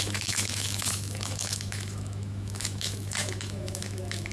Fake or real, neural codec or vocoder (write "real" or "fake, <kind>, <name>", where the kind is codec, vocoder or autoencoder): fake, autoencoder, DAC-VAE